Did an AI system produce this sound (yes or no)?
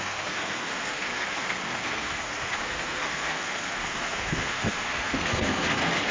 yes